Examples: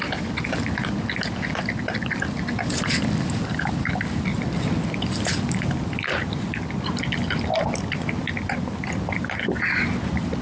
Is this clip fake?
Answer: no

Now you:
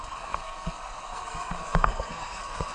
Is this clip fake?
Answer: yes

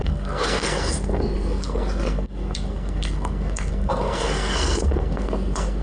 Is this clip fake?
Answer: yes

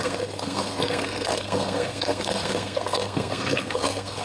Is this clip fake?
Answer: yes